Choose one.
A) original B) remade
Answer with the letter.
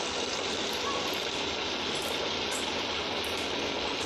A